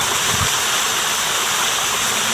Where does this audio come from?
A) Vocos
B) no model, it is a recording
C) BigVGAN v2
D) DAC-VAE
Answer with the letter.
B